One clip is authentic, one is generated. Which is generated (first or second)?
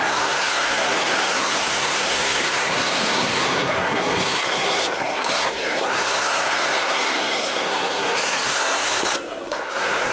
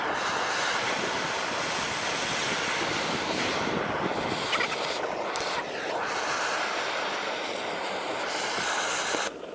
first